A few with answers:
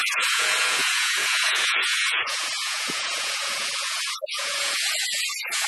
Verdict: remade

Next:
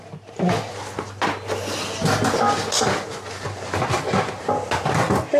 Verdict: recorded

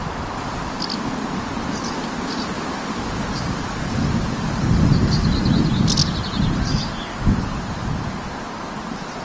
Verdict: recorded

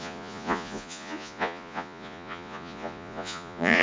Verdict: remade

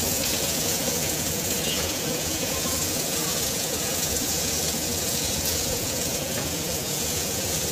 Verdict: remade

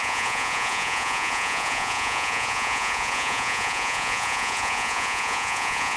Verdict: remade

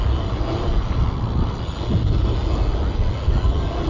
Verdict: recorded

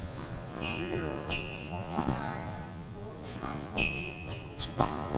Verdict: remade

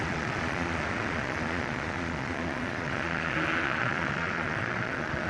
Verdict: remade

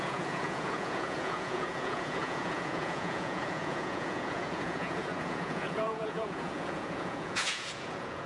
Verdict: remade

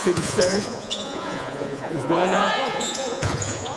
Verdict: remade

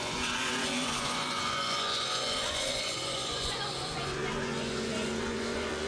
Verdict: remade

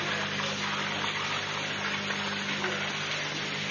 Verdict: recorded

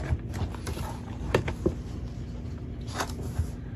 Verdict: recorded